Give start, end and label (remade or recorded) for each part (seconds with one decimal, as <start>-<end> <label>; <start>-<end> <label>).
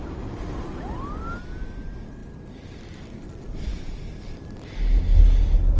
0.0-2.2 recorded; 2.2-3.8 remade; 3.8-5.8 recorded